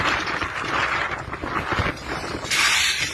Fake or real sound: real